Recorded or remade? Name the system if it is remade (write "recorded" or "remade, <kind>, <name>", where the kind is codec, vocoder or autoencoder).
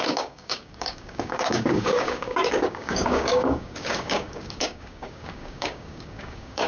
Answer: remade, codec, DAC